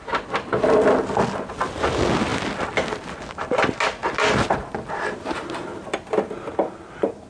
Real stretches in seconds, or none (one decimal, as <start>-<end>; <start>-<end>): 0.0-7.3